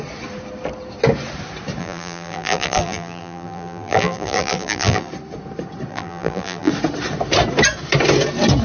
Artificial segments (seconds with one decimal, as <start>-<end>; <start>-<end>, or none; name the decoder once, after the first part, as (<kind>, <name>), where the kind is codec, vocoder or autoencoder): 1.8-5.1 (vocoder, BigVGAN v2); 5.9-6.7